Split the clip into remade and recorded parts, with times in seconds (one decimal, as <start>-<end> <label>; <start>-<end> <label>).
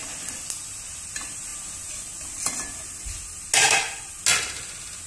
0.0-5.1 recorded